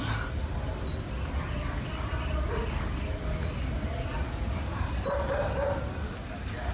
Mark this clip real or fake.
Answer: real